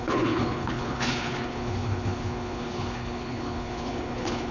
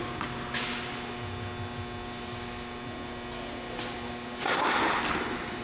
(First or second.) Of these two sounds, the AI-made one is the first